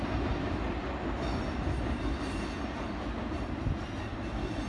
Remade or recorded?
recorded